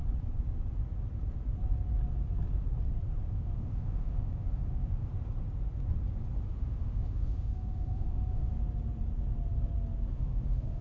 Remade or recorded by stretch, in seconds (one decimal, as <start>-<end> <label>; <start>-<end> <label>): 0.0-3.3 recorded; 3.3-5.1 remade; 5.1-6.5 recorded; 6.5-8.5 remade; 8.5-10.1 recorded; 10.1-10.8 remade